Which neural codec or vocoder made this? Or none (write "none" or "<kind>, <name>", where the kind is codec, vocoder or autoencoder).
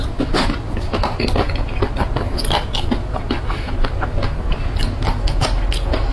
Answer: none